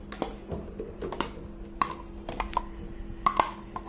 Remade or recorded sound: recorded